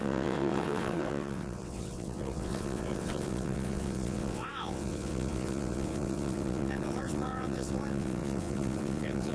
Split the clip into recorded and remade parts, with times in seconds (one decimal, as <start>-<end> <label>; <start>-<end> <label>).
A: 0.0-9.3 remade